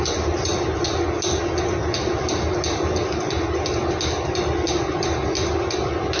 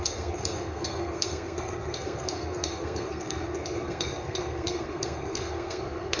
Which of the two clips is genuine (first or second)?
first